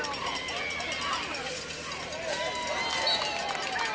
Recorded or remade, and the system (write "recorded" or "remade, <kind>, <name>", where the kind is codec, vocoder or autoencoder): recorded